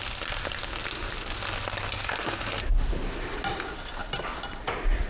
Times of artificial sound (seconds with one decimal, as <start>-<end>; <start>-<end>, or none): 1.9-5.1